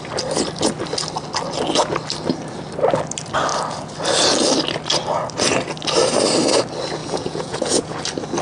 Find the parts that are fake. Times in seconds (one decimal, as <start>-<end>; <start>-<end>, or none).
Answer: 7.0-8.0